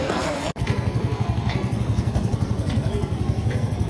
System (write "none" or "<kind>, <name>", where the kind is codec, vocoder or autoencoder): codec, SNAC